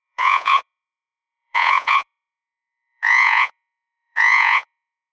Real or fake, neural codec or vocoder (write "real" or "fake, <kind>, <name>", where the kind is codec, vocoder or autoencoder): fake, vocoder, Vocos